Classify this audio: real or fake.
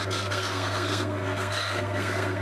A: fake